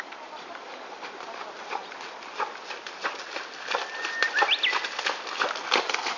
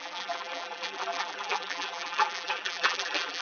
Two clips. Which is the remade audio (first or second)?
second